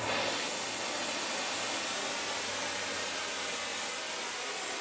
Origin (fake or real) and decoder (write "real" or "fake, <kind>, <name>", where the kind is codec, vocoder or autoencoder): real